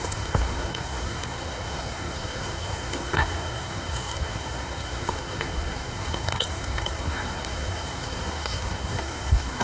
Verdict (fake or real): fake